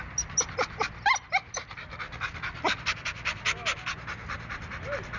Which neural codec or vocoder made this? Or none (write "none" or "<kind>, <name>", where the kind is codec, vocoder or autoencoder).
none